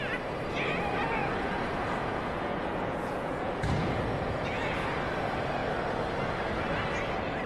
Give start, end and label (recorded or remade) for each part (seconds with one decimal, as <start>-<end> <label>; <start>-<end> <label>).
0.0-1.2 recorded; 1.2-5.0 remade; 5.0-7.5 recorded